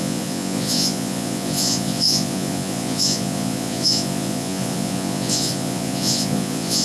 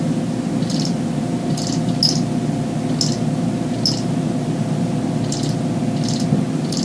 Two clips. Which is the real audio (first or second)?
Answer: second